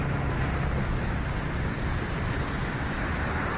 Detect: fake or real real